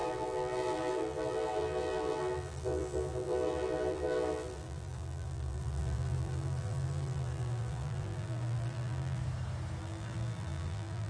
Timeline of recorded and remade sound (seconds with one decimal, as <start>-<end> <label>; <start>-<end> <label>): 0.0-9.2 remade; 9.2-9.8 recorded; 9.8-11.1 remade